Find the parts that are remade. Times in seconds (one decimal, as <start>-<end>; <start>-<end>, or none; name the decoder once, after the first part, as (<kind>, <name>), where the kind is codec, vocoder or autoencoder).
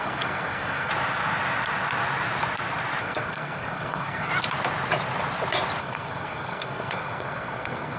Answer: 0.0-0.9 (codec, SNAC); 3.0-4.3; 5.8-8.0